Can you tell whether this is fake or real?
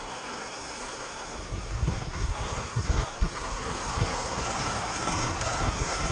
fake